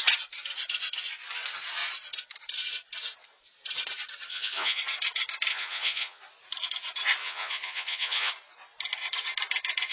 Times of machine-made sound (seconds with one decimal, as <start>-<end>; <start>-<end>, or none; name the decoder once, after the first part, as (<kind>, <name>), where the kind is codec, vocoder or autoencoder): 4.3-4.8 (vocoder, Vocos); 5.5-6.2; 7.2-8.3